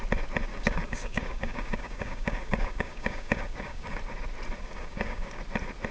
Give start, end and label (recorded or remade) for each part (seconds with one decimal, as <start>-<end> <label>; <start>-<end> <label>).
0.0-0.5 recorded; 0.5-4.0 remade; 4.0-4.6 recorded; 4.6-5.4 remade; 5.4-5.9 recorded